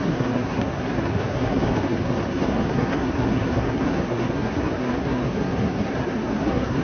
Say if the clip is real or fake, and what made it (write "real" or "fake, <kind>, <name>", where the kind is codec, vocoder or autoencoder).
fake, codec, SNAC